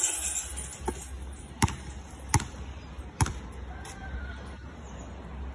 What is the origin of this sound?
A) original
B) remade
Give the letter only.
A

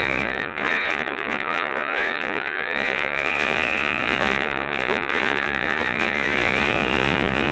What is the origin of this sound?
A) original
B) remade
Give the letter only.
B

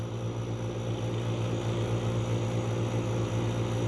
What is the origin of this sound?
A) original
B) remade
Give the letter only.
A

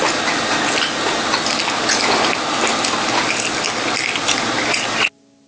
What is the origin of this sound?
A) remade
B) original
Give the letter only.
B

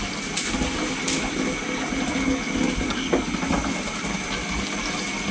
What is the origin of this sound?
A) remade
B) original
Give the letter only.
B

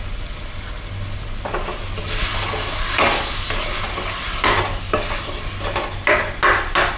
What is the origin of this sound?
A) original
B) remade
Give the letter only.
A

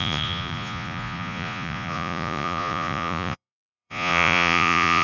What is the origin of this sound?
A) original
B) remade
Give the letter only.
B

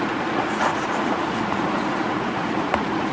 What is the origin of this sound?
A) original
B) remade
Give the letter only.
B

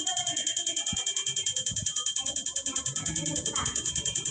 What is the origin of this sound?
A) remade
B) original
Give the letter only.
A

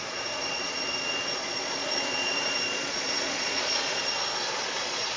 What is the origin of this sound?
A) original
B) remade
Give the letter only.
B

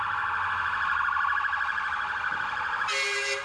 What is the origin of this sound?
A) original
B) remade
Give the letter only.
A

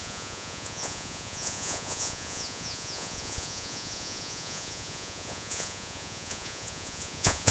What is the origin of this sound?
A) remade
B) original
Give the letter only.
A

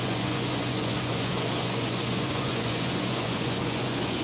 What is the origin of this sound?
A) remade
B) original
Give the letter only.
A